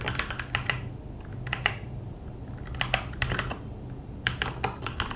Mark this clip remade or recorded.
recorded